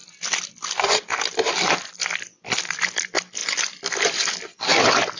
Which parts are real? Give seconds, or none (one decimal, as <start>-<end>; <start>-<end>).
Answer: 0.0-5.2